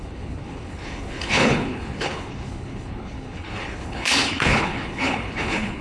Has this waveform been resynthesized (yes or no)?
yes